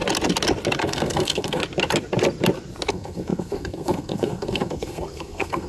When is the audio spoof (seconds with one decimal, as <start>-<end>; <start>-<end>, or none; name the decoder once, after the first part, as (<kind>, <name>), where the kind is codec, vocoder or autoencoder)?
0.8-1.6 (codec, SNAC); 2.9-5.7